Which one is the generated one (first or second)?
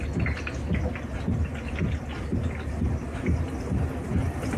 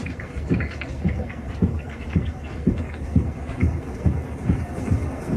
second